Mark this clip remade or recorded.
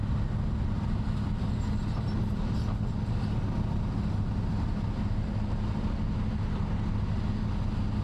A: recorded